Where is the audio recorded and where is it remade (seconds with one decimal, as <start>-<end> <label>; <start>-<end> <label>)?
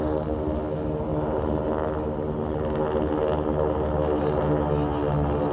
0.0-5.5 recorded